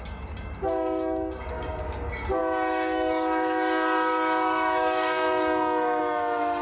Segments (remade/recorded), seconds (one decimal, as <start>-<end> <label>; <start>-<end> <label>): 0.0-6.6 remade